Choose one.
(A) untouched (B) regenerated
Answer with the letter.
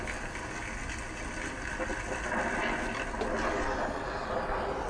A